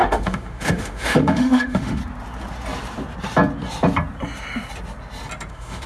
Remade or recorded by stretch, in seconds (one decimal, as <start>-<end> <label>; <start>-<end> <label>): 0.0-2.0 remade; 2.0-5.5 recorded; 5.5-5.9 remade